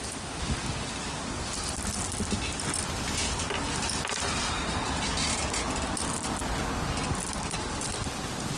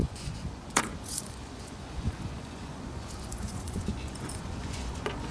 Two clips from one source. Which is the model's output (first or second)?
second